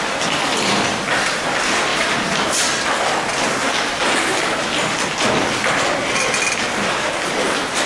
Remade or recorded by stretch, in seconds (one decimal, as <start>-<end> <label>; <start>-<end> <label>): 0.0-7.9 recorded